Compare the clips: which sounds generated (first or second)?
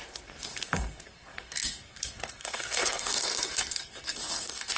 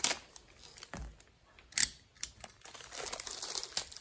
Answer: first